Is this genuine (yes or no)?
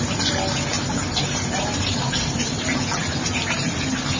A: yes